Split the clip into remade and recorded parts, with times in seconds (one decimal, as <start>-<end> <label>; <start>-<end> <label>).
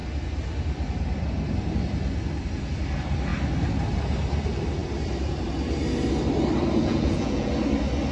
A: 0.0-6.8 recorded; 6.8-7.5 remade; 7.5-8.1 recorded